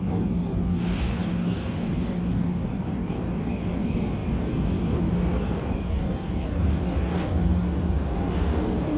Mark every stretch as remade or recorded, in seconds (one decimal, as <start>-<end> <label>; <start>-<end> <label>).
0.0-9.0 remade